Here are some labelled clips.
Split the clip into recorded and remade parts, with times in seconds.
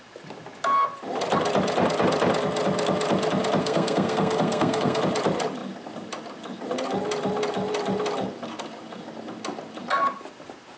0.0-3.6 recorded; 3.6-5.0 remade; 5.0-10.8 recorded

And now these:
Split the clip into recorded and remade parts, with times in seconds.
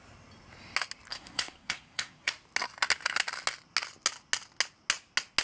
0.0-1.1 recorded; 1.1-2.3 remade; 2.3-5.4 recorded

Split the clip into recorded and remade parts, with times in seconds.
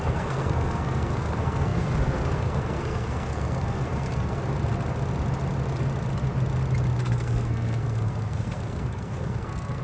0.0-4.4 remade; 4.4-7.0 recorded; 7.0-9.8 remade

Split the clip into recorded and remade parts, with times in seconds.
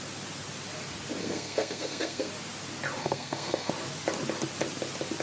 0.0-1.2 recorded; 1.2-2.3 remade; 2.3-3.0 recorded; 3.0-3.7 remade; 3.7-5.2 recorded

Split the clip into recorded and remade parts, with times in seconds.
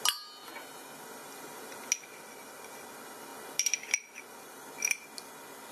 0.0-5.7 recorded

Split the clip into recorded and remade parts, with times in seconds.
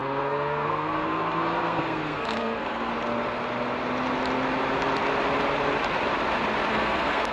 0.0-2.9 remade; 2.9-6.7 recorded; 6.7-7.3 remade